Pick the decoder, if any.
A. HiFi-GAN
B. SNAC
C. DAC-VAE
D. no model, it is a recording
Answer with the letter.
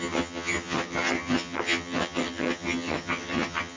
A